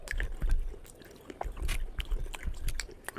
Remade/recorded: recorded